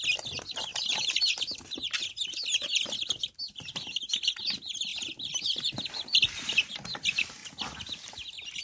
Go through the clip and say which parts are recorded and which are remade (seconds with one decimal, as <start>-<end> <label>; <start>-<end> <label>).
0.0-8.6 recorded